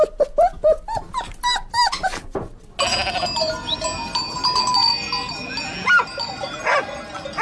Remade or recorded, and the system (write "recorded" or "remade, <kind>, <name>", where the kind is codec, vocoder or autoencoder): recorded